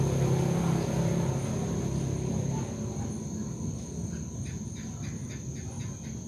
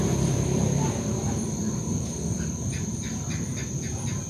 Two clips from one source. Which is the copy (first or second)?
second